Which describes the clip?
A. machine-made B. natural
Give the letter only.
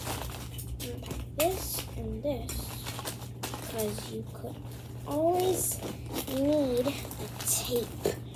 B